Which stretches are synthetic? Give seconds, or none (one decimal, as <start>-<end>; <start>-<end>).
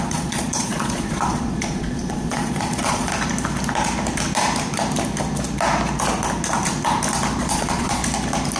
0.0-3.1; 7.4-8.0